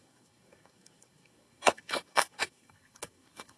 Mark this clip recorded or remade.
remade